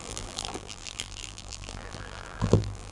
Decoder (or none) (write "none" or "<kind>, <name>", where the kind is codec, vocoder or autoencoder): vocoder, BigVGAN v2